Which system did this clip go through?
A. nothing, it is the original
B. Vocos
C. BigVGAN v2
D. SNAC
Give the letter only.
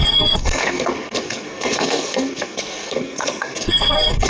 D